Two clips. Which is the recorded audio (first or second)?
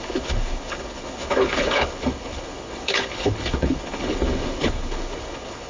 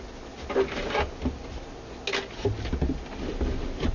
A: second